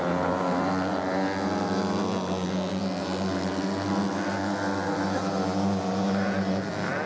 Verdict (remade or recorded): recorded